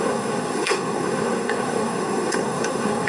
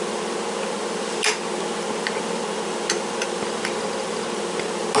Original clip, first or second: second